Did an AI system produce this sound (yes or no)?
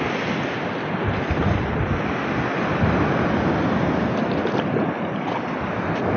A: no